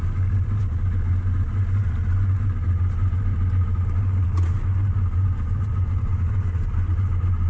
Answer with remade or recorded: remade